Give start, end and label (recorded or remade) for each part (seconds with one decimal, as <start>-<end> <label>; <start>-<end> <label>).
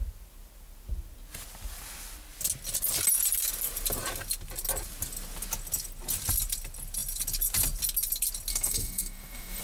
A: 0.0-8.5 recorded; 8.5-9.6 remade